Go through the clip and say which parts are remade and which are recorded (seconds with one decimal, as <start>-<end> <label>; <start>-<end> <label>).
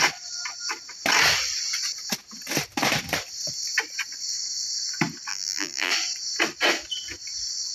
0.0-5.3 recorded; 5.3-5.9 remade; 5.9-7.7 recorded